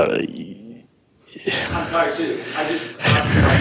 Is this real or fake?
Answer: real